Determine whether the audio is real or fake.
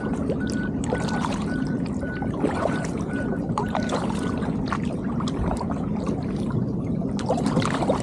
fake